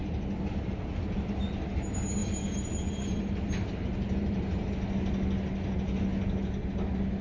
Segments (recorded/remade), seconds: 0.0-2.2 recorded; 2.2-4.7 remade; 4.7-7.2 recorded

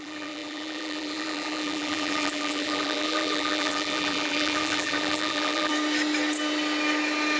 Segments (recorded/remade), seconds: 0.0-5.7 remade; 5.7-7.4 recorded

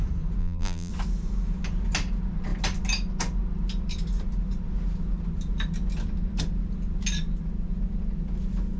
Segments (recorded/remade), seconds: 0.0-0.4 recorded; 0.4-0.9 remade; 0.9-8.8 recorded

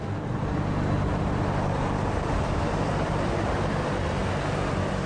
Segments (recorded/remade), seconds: 0.0-1.1 recorded; 1.1-3.3 remade; 3.3-5.1 recorded

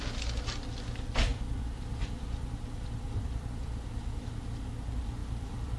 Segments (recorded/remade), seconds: 0.0-1.3 recorded; 1.3-4.8 remade; 4.8-5.2 recorded; 5.2-5.8 remade

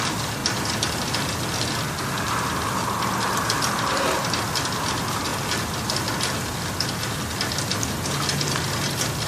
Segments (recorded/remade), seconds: 0.0-0.4 remade; 0.4-3.0 recorded; 3.0-5.3 remade; 5.3-8.3 recorded; 8.3-9.3 remade

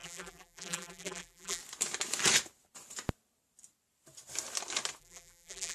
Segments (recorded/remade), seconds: 0.0-1.6 remade; 1.6-5.0 recorded; 5.0-5.7 remade